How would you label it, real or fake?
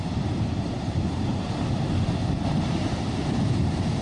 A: fake